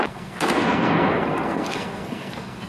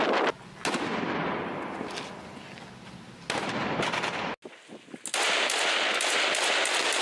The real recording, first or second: second